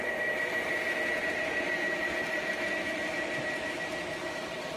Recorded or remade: recorded